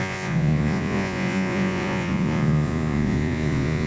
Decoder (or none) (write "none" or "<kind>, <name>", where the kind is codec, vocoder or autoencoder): vocoder, Vocos